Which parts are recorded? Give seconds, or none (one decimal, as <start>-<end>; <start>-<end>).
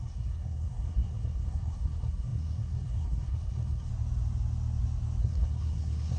3.9-5.2